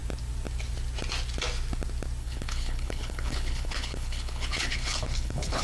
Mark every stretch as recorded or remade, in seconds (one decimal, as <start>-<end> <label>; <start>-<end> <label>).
0.0-2.2 recorded; 2.2-5.6 remade